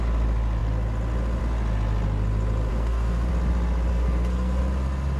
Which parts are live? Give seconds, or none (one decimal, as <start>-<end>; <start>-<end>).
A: 0.0-2.7; 3.3-3.9; 4.6-5.2